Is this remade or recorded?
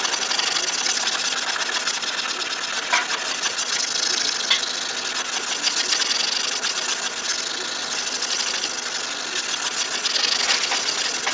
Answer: recorded